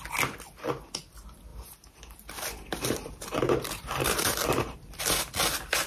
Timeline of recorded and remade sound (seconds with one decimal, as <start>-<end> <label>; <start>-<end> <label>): 0.0-1.5 recorded; 1.5-5.0 remade; 5.0-5.9 recorded